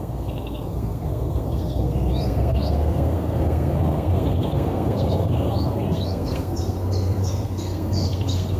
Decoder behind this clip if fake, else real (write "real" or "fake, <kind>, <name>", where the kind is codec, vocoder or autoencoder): fake, codec, SNAC